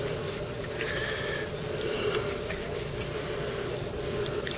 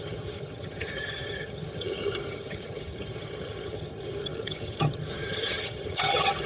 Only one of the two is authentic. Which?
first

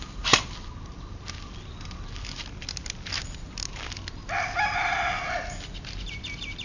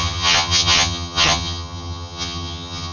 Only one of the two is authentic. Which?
first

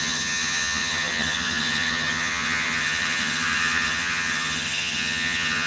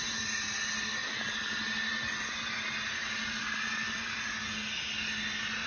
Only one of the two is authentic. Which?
second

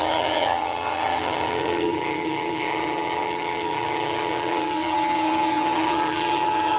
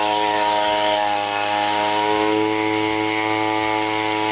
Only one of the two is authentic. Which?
second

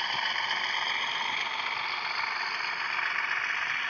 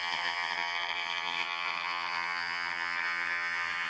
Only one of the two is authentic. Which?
first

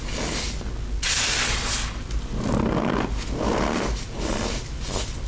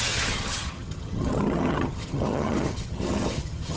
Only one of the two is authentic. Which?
first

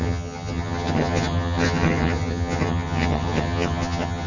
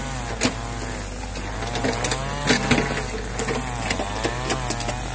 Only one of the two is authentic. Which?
second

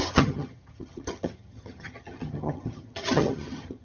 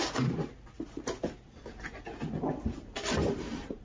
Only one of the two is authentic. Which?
second